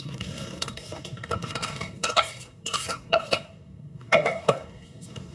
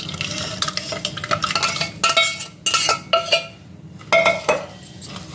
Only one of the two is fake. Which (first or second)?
first